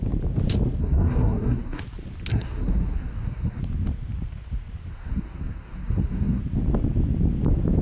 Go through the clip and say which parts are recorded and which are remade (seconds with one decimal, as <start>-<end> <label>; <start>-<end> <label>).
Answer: 0.0-0.8 recorded; 0.8-1.8 remade; 1.8-2.3 recorded; 2.3-3.6 remade; 3.6-4.9 recorded; 4.9-6.4 remade; 6.4-7.8 recorded